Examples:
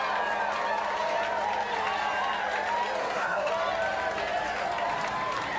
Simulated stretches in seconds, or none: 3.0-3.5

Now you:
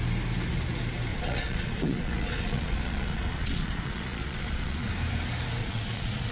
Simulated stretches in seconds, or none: 1.1-4.9; 5.6-6.3

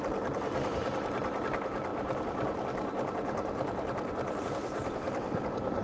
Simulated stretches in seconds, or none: none

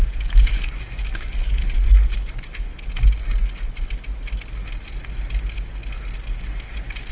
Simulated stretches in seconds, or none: 0.0-1.6; 2.1-2.7

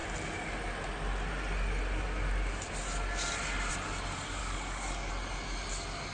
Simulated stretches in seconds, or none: 4.4-5.1

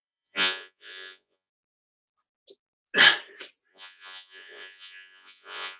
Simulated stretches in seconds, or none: 0.0-1.5; 3.7-5.8

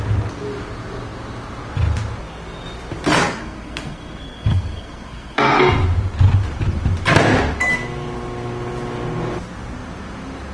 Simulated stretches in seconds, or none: 3.4-5.5

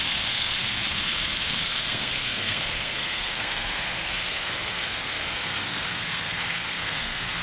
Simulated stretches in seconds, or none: 0.0-7.4